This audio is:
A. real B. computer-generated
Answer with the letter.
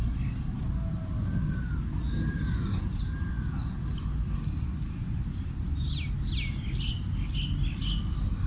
A